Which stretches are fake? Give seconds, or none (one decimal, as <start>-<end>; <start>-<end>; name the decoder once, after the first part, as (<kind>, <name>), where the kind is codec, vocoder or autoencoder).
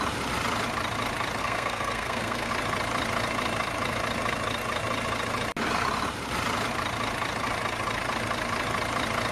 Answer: 1.4-2.5 (codec, SNAC)